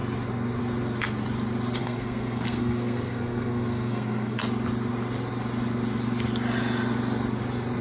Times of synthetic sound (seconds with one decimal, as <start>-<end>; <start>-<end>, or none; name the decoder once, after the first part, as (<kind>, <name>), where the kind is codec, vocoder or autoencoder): 1.8-4.4 (codec, SNAC)